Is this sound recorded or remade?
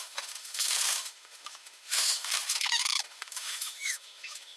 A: remade